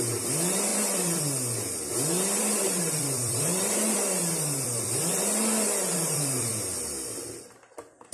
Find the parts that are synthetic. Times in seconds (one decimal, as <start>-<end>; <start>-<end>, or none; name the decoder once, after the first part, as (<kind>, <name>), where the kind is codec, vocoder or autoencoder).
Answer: 0.7-1.2 (vocoder, BigVGAN v2); 2.4-6.5